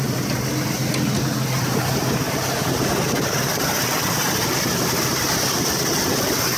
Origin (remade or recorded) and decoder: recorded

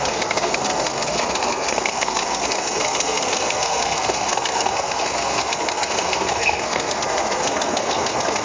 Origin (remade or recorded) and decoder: remade, codec, SNAC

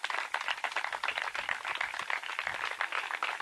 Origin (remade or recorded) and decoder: recorded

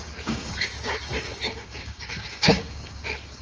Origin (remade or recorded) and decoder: remade, codec, DAC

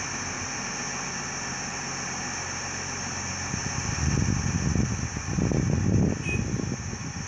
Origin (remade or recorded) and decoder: recorded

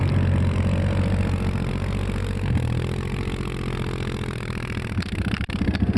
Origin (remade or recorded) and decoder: remade, vocoder, BigVGAN v2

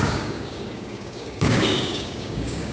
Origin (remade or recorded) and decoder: remade, codec, DAC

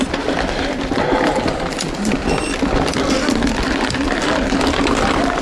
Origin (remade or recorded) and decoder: recorded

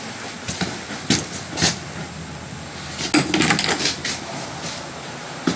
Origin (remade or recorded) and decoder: recorded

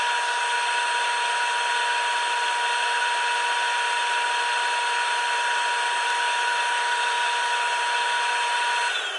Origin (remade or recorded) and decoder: recorded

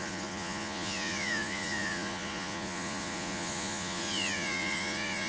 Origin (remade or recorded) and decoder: remade, vocoder, Vocos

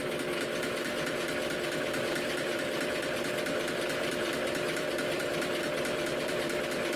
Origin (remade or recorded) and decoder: remade, vocoder, BigVGAN v2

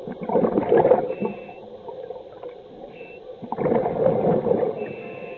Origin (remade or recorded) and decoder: recorded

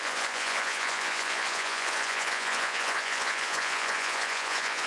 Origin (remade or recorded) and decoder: remade, vocoder, Vocos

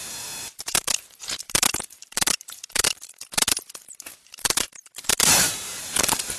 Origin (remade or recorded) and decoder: remade, vocoder, BigVGAN v2